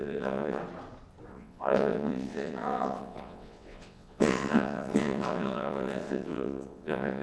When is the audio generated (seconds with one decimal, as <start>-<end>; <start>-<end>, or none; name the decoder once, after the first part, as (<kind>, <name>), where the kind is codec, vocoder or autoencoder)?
0.0-0.6 (vocoder, WaveNeXt); 1.3-7.2